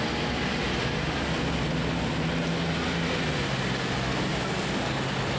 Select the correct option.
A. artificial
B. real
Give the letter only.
B